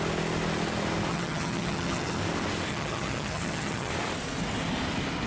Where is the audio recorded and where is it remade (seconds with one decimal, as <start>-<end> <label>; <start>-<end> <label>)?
0.0-1.1 recorded; 1.1-2.2 remade; 2.2-2.7 recorded; 2.7-3.9 remade; 3.9-5.3 recorded